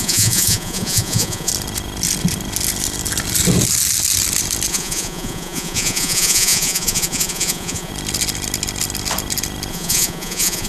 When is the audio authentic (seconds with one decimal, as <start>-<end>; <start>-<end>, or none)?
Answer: 1.5-4.7; 7.9-9.7